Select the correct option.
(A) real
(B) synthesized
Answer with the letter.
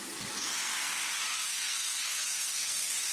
B